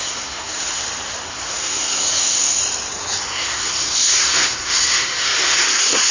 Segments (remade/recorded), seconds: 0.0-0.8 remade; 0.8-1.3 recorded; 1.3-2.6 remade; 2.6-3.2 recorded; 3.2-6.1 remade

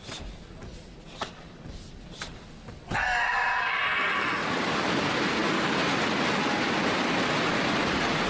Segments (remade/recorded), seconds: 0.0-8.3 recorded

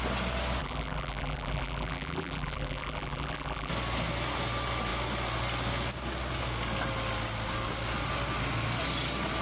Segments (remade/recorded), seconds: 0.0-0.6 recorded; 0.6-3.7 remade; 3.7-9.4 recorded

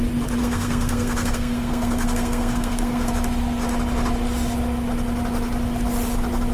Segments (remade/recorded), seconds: 0.0-0.4 recorded; 0.4-3.1 remade; 3.1-6.5 recorded

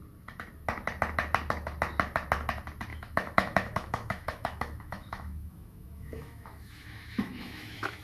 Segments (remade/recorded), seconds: 0.0-2.9 recorded; 2.9-8.0 remade